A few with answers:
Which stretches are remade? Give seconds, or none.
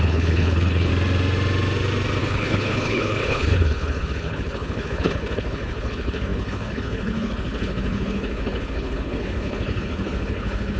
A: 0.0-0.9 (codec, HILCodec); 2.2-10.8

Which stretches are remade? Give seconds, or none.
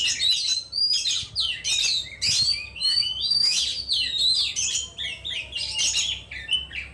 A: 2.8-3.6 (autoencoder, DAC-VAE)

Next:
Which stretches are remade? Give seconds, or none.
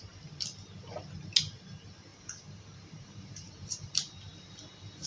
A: 2.1-3.5 (vocoder, BigVGAN v2)